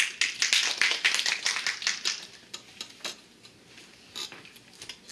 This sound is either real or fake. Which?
real